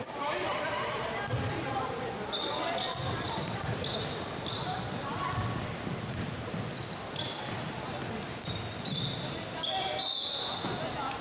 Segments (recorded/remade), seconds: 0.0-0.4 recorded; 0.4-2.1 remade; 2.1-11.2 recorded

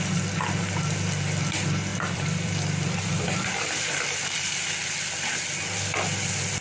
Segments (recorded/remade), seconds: 0.0-1.9 recorded; 1.9-4.7 remade; 4.7-6.6 recorded